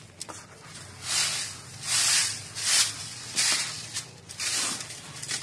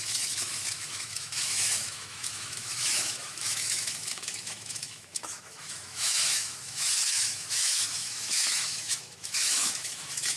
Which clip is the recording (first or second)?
first